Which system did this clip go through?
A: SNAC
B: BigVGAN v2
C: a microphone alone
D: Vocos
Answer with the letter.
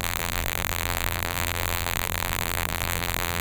B